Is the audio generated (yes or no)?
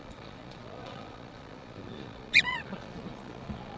yes